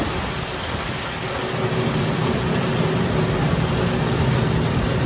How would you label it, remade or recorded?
recorded